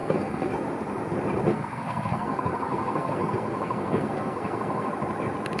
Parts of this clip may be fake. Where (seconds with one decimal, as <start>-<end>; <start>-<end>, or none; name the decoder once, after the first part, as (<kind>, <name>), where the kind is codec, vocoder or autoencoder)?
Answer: 0.0-0.5 (codec, SNAC); 1.5-4.9